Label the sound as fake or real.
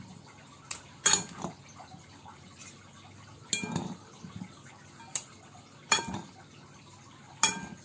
real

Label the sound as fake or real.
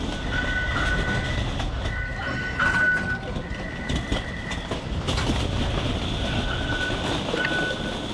real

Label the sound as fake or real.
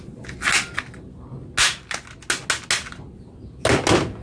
real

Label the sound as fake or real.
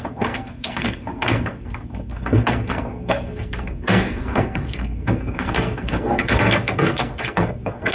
fake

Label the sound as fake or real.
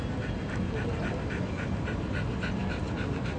real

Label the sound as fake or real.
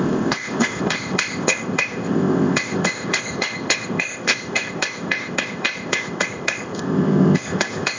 fake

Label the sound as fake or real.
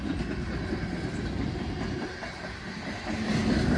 real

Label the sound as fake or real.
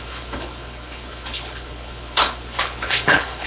fake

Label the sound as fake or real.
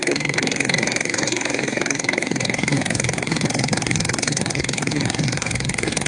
fake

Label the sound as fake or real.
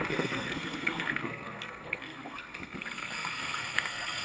fake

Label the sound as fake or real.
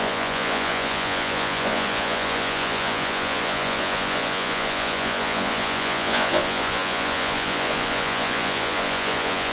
fake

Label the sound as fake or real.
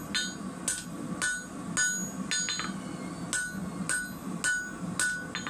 real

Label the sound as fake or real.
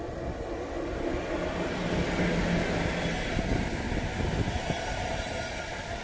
real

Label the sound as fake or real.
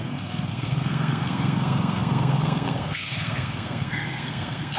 fake